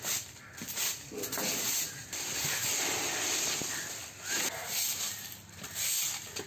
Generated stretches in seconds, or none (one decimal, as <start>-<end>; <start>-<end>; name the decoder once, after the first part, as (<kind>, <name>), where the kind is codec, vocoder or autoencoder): 2.7-3.6 (vocoder, BigVGAN v2)